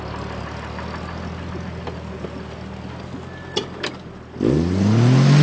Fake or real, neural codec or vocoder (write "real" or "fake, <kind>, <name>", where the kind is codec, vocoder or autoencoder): real